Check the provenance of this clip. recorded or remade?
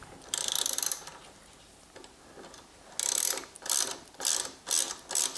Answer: recorded